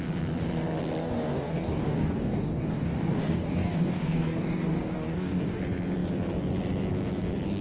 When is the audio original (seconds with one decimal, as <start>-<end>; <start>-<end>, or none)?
0.0-1.0; 5.6-7.6